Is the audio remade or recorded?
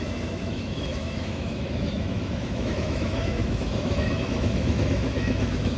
remade